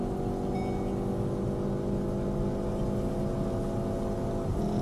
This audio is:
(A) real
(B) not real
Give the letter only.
A